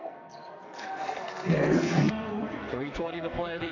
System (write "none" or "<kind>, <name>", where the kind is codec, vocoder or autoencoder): codec, SNAC